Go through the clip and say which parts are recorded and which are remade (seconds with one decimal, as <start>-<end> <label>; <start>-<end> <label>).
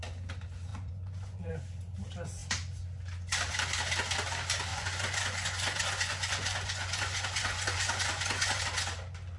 0.0-0.7 recorded; 0.7-1.5 remade; 1.5-4.7 recorded; 4.7-8.6 remade; 8.6-9.4 recorded